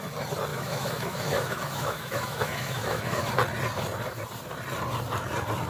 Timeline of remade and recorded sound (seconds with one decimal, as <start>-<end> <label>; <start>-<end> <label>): 0.0-0.5 recorded; 0.5-3.3 remade; 3.3-5.7 recorded

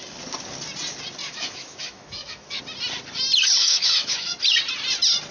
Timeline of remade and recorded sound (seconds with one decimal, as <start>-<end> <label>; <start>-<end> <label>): 0.0-1.2 recorded; 1.2-2.6 remade; 2.6-3.6 recorded; 3.6-4.4 remade; 4.4-5.3 recorded

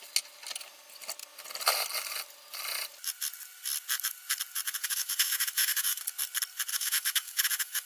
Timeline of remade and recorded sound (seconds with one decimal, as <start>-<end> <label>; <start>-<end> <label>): 0.0-4.8 recorded; 4.8-6.0 remade; 6.0-6.7 recorded; 6.7-7.9 remade

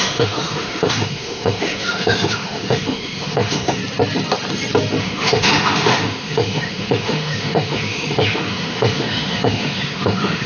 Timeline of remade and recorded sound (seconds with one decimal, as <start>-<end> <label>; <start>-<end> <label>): 0.0-3.8 remade; 3.8-5.0 recorded; 5.0-10.5 remade

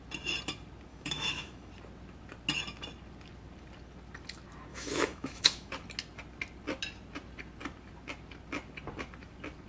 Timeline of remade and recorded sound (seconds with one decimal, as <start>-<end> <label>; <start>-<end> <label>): 0.0-0.9 recorded; 0.9-1.7 remade; 1.7-4.7 recorded; 4.7-5.7 remade; 5.7-9.7 recorded

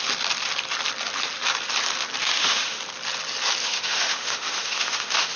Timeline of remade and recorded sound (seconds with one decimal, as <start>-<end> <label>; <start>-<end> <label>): 0.0-2.2 recorded; 2.2-2.8 remade; 2.8-3.6 recorded; 3.6-5.4 remade

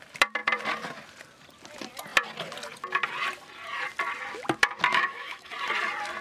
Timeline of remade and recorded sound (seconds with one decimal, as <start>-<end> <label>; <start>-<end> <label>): 0.0-4.9 recorded; 4.9-5.5 remade; 5.5-6.2 recorded